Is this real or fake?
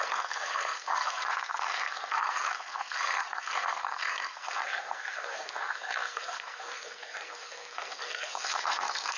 fake